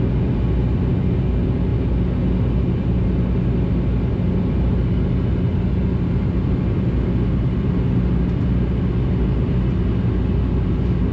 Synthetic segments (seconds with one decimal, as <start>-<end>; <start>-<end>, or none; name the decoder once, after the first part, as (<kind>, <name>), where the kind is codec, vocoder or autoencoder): none